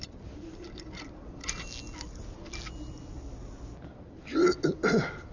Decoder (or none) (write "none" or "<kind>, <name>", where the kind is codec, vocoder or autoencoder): none